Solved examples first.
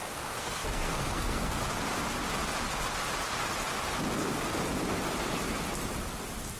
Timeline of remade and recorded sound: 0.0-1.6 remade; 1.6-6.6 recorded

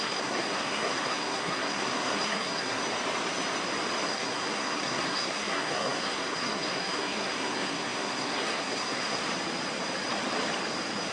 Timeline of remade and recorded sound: 0.0-2.8 remade; 2.8-4.0 recorded; 4.0-9.2 remade; 9.2-11.1 recorded

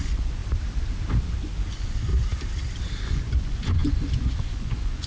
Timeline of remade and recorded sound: 0.0-0.4 remade; 0.4-1.7 recorded; 1.7-2.1 remade; 2.1-3.0 recorded; 3.0-5.1 remade

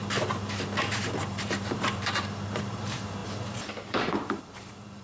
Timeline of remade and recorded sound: 0.0-0.9 recorded; 0.9-5.0 remade

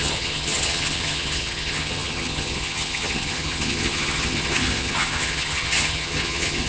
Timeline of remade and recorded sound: 0.0-6.7 remade

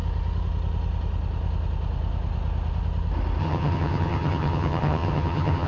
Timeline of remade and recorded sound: 0.0-3.4 recorded; 3.4-5.7 remade

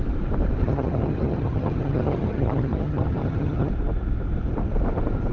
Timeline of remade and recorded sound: 0.0-0.6 recorded; 0.6-3.7 remade; 3.7-5.3 recorded